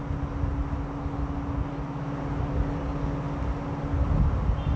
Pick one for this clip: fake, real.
real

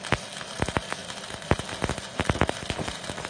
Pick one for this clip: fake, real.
real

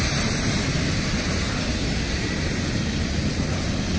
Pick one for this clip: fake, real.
real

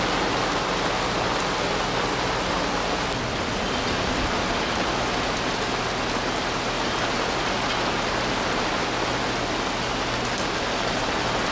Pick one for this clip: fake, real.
real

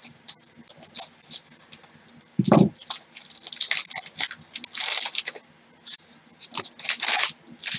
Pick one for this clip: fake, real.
real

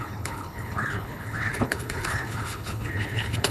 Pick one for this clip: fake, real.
fake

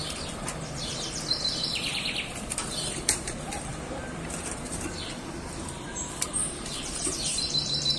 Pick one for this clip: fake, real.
fake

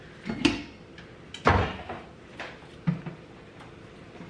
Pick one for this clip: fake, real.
real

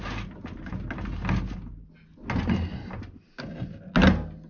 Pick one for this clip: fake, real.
real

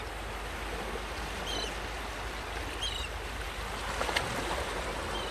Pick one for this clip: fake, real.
real